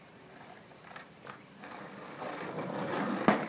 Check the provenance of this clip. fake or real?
real